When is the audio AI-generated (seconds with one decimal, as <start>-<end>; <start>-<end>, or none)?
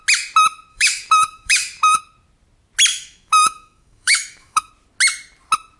0.7-2.0; 2.9-4.7